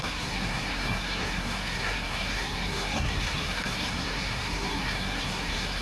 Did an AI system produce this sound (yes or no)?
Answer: yes